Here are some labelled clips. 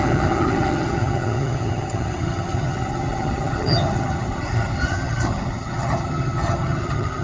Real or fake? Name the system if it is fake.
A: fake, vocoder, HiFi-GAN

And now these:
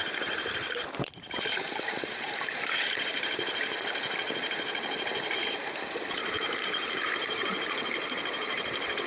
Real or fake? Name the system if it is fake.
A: fake, vocoder, BigVGAN v2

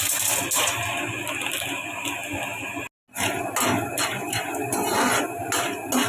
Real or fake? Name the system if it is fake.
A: real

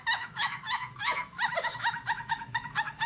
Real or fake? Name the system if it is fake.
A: fake, autoencoder, DAC-VAE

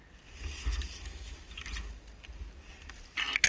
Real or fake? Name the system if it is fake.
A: real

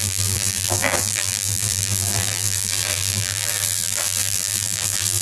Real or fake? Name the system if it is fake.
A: fake, vocoder, BigVGAN v2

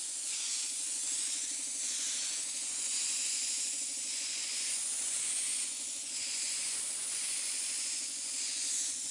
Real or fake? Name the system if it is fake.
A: fake, vocoder, Vocos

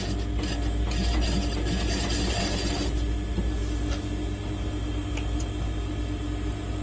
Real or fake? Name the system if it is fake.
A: real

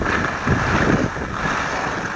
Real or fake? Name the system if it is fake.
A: real